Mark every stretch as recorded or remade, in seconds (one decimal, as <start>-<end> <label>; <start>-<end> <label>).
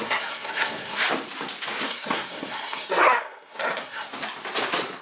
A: 0.0-1.0 remade; 1.0-1.8 recorded; 1.8-4.1 remade; 4.1-5.0 recorded